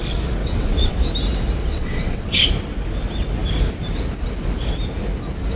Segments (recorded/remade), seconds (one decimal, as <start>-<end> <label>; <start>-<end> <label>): 0.0-0.4 recorded; 0.4-1.0 remade; 1.0-1.6 recorded; 1.6-2.5 remade; 2.5-5.6 recorded